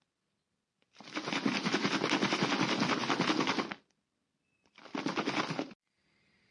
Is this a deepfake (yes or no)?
no